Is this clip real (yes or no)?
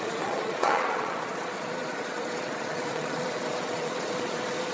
no